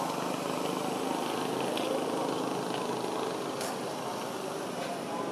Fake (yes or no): no